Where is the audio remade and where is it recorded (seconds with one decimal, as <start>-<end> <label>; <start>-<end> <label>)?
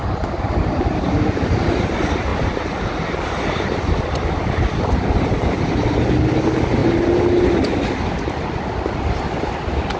0.0-2.3 recorded; 2.3-4.0 remade; 4.0-6.8 recorded; 6.8-7.9 remade; 7.9-10.0 recorded